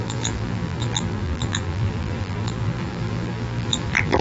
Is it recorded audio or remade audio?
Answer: remade